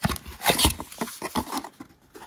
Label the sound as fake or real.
real